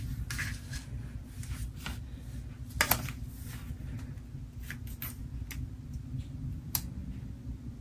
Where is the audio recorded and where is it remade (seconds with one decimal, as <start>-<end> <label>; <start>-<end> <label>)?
0.0-7.8 recorded